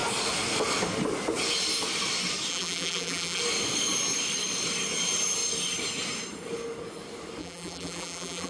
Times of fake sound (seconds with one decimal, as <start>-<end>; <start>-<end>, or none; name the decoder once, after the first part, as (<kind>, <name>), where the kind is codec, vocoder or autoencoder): 2.5-3.4 (vocoder, BigVGAN v2); 7.4-8.5